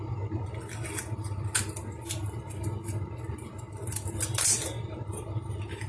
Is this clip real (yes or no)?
yes